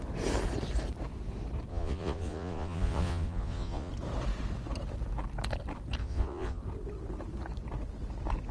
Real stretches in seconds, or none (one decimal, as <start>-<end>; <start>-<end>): 0.0-1.7; 3.9-6.0; 6.6-8.5